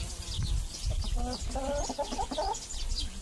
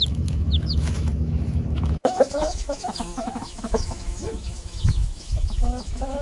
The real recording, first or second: first